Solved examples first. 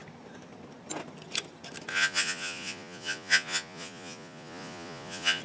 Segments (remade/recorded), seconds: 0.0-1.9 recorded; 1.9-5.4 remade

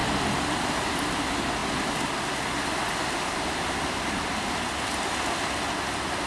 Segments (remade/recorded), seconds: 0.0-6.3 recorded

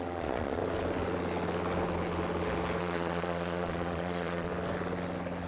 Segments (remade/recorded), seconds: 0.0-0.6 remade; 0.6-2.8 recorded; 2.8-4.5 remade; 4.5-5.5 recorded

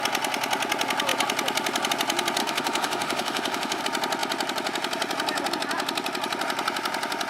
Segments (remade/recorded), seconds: 0.0-2.4 recorded; 2.4-3.8 remade; 3.8-7.3 recorded

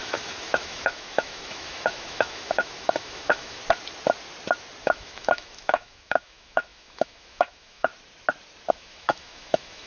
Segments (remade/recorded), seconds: 0.0-3.6 remade; 3.6-4.8 recorded; 4.8-7.9 remade; 7.9-8.7 recorded; 8.7-9.9 remade

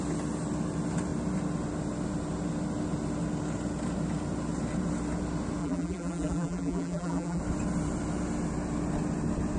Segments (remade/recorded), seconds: 0.0-5.6 recorded; 5.6-7.4 remade; 7.4-9.6 recorded

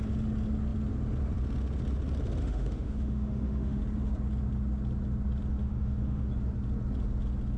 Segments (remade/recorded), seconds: 0.0-2.4 recorded; 2.4-3.8 remade; 3.8-5.6 recorded; 5.6-6.3 remade; 6.3-7.6 recorded